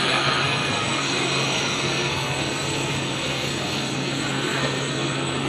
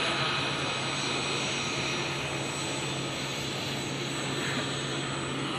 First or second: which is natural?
second